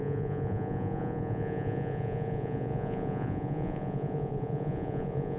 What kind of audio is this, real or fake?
fake